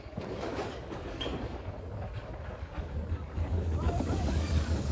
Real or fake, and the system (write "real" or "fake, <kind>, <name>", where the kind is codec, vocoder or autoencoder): fake, codec, DAC